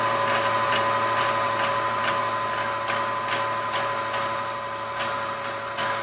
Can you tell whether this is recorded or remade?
recorded